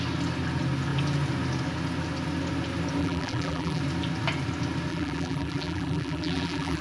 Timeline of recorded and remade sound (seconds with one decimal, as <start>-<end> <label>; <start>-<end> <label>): 0.0-3.0 recorded; 3.0-3.8 remade; 3.8-4.9 recorded; 4.9-6.8 remade